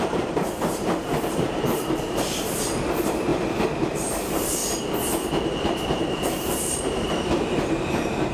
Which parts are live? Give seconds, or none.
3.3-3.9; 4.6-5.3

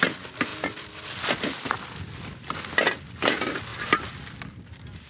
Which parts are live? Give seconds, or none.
0.5-2.4

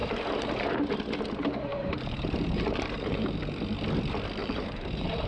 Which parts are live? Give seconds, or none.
0.9-1.7; 3.4-4.4

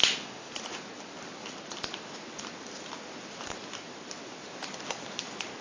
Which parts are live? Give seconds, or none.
0.0-1.4; 4.8-5.6

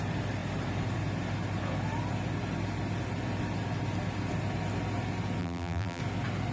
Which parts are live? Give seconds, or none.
0.0-5.4; 6.0-6.5